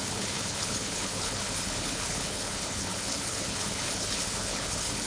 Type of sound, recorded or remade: remade